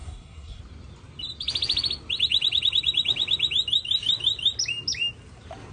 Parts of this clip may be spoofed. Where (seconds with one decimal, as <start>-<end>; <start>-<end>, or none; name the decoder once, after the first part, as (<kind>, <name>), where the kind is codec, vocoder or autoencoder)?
0.0-0.6 (codec, SNAC)